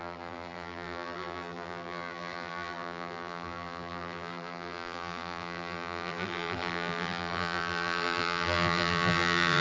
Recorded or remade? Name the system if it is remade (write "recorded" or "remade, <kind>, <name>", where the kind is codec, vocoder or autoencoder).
remade, vocoder, BigVGAN v2